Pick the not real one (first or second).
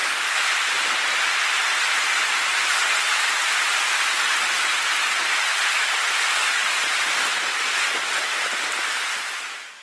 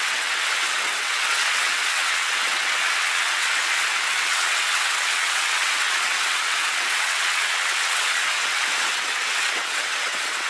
second